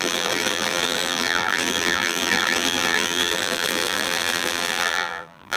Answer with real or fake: fake